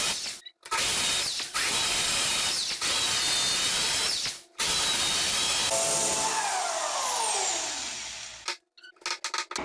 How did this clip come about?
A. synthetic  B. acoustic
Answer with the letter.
B